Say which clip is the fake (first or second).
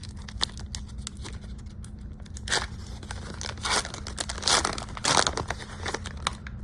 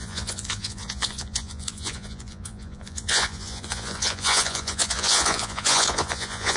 second